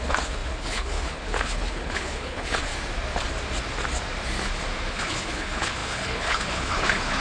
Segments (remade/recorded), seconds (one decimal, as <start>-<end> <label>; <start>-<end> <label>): 0.0-2.7 remade; 2.7-4.9 recorded; 4.9-7.2 remade